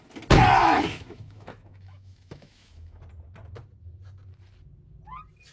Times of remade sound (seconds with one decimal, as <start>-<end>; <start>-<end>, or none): 0.6-3.0